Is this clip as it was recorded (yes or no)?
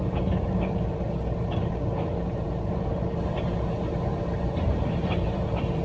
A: no